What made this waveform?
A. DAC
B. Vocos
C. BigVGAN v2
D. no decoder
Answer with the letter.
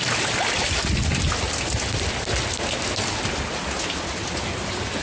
D